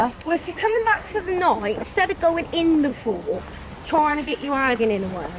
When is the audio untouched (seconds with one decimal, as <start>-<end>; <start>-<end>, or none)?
1.1-2.9; 3.4-4.1; 4.8-5.4